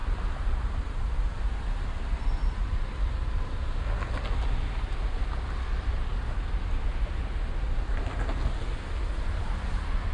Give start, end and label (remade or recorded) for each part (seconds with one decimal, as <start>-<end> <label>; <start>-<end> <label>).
0.0-4.1 remade; 4.1-10.1 recorded